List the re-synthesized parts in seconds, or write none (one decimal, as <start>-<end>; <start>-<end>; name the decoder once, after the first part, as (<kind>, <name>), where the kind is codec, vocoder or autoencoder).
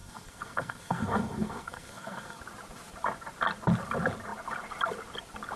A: 0.0-2.4 (codec, SNAC)